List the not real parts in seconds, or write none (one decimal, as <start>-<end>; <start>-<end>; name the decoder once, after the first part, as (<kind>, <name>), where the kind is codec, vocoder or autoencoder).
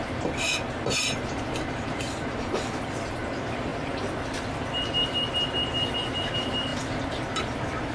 none